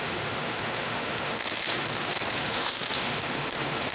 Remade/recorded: remade